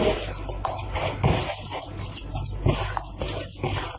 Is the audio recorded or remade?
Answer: recorded